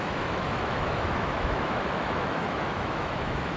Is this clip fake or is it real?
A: fake